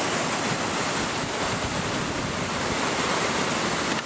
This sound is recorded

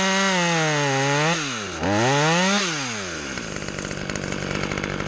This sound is recorded